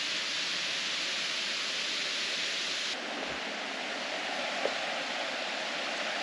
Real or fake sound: real